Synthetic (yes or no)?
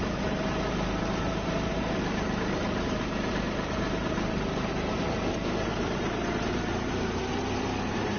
yes